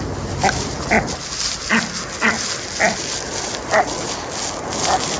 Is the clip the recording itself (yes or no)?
yes